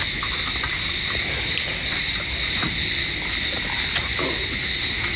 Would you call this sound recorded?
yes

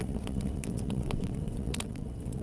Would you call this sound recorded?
no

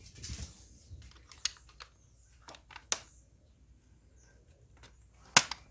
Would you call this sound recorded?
yes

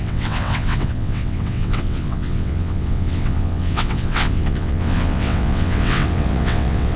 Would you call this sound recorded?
no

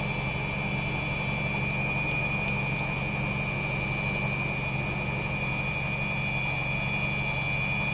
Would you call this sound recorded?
yes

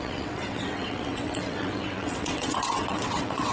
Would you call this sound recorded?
no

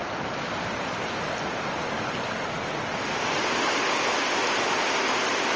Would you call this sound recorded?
yes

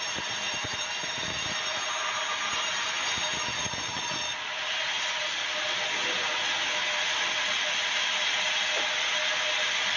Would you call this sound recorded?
yes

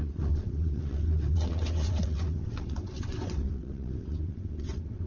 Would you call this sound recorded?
no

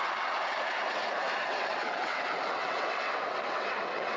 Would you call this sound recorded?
no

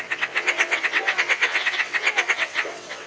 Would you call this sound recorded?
no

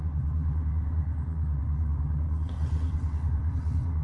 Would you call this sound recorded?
no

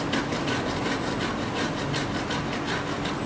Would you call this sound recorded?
yes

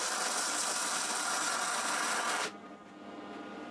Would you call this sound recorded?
yes